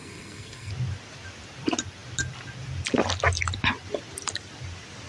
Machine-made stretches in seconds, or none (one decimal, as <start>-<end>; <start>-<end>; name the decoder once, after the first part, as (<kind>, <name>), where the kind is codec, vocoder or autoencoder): 0.0-0.7 (codec, SNAC)